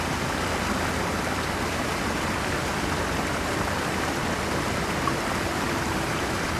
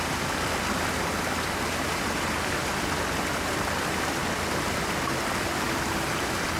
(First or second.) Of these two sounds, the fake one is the first